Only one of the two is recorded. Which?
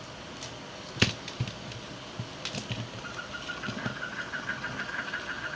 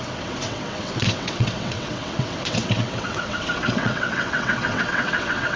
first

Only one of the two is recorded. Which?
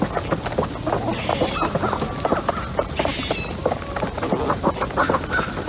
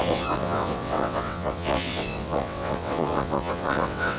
first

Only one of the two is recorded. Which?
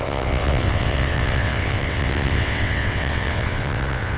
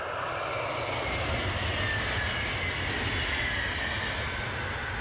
second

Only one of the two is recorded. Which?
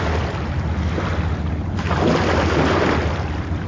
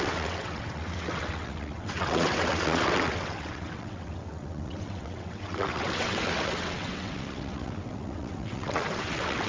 first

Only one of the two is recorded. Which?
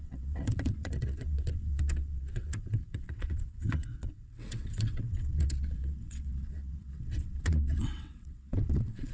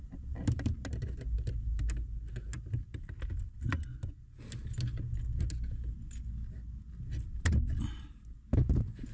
second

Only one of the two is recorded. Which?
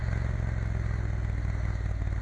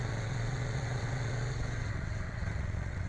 first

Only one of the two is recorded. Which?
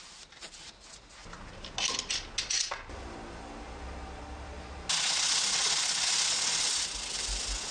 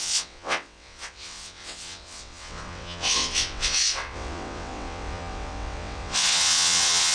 first